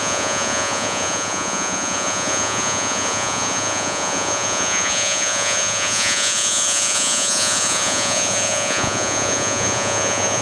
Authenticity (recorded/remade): remade